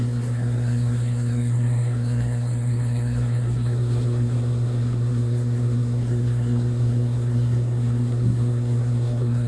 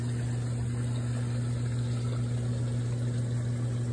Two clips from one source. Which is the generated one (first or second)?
first